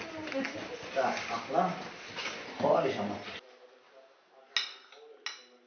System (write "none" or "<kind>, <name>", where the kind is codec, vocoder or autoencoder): none